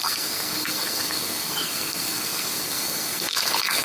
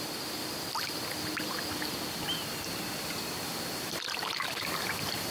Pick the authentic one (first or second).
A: second